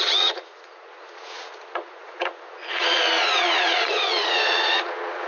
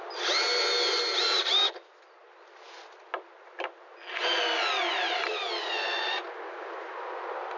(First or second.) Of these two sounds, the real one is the second